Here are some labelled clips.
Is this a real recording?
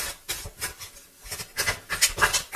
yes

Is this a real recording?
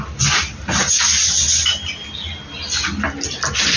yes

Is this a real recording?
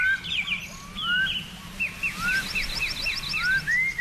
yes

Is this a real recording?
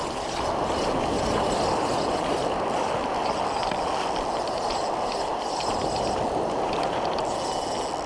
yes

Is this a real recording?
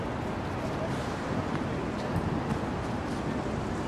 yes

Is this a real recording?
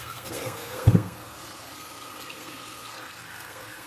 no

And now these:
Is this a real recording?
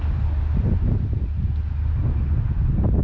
yes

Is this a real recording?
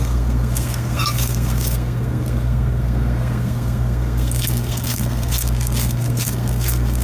no